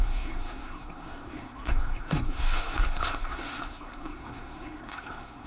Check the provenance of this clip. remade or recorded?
remade